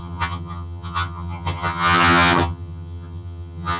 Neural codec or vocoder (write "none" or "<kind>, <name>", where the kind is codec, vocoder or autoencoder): vocoder, HiFi-GAN